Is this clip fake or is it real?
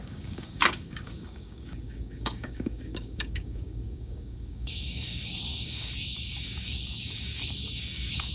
fake